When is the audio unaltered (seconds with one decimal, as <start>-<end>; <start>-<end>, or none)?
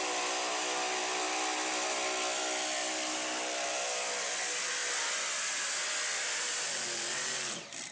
0.0-7.9